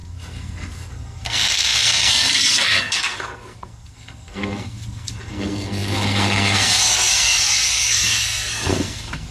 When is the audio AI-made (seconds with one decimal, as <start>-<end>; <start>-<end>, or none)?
0.0-9.3